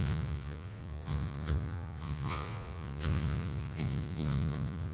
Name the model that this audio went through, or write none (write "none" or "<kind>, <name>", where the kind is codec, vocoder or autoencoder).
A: vocoder, Vocos